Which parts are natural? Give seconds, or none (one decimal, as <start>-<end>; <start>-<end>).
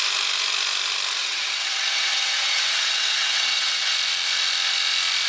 0.0-1.2; 3.9-5.3